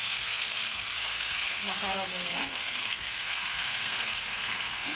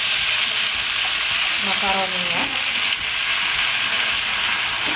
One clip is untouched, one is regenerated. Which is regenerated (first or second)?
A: first